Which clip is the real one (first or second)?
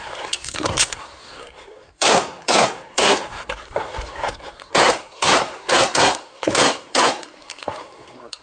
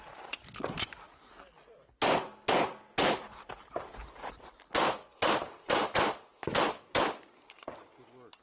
second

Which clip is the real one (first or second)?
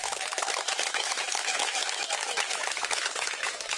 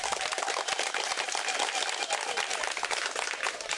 second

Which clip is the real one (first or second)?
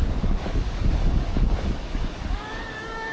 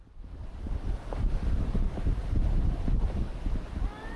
second